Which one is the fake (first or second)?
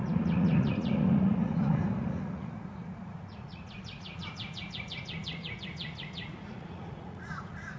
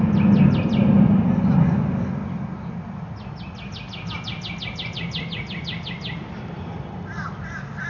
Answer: first